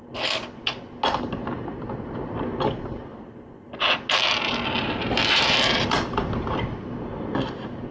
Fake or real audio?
real